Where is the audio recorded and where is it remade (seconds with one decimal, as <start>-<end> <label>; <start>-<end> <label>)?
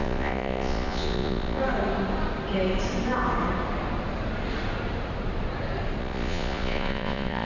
0.0-1.6 remade; 1.6-6.0 recorded; 6.0-7.4 remade